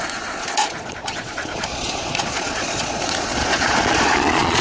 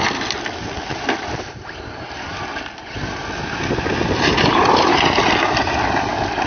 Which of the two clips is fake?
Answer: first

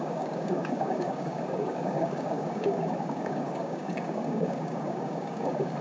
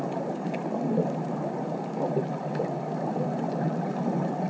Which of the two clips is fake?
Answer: first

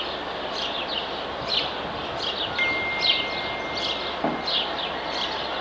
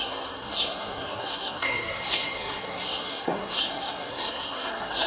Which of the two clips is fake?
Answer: second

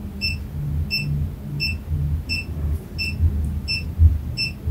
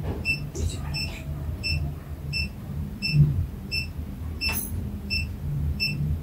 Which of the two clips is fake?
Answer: second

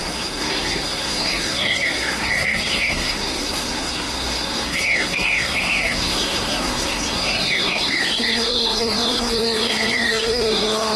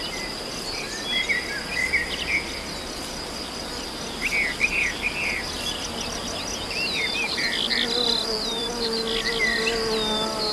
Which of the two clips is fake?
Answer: first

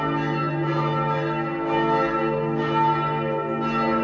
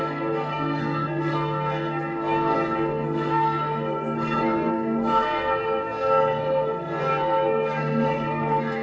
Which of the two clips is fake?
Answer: second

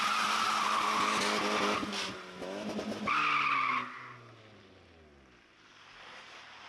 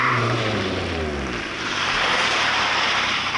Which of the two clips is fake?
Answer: second